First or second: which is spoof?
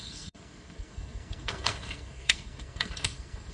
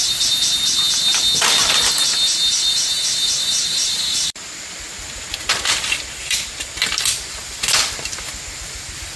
first